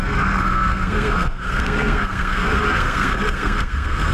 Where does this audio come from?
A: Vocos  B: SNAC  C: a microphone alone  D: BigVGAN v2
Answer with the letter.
B